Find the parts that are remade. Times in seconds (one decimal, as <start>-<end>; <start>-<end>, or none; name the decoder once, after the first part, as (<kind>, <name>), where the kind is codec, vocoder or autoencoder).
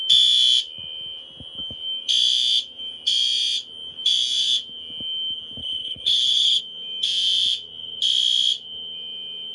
5.6-6.6 (codec, HILCodec)